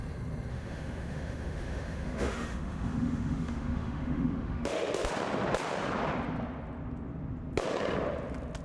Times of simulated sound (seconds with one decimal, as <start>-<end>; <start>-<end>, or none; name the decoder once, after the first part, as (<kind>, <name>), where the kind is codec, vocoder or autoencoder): 0.5-5.1 (autoencoder, DAC-VAE)